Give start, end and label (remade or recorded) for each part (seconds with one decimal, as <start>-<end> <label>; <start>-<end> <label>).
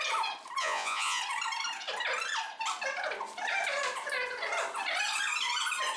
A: 0.0-0.6 recorded; 0.6-1.2 remade; 1.2-6.0 recorded